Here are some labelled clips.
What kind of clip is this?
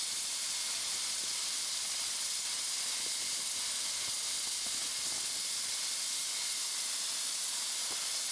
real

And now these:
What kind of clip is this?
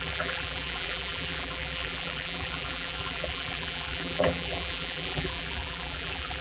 fake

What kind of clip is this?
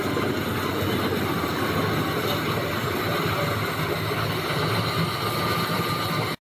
real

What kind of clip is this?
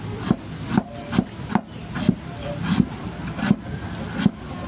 real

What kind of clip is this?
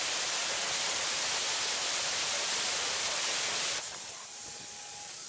real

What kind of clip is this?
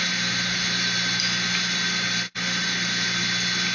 real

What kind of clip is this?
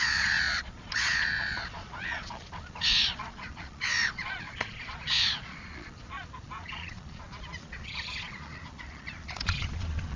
fake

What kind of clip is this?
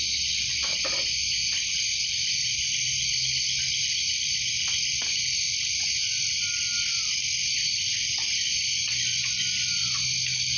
real